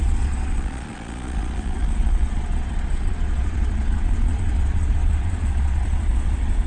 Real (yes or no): no